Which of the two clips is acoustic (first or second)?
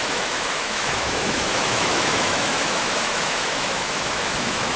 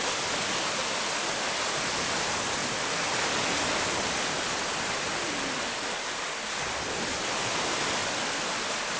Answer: second